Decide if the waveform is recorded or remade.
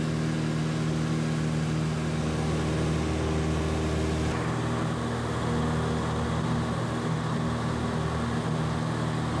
recorded